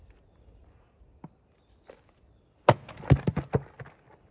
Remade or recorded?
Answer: recorded